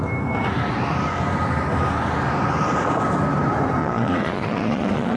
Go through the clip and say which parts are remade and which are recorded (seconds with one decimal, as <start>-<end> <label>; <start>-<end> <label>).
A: 0.0-3.8 recorded; 3.8-5.2 remade